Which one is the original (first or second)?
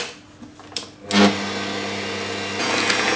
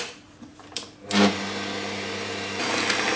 first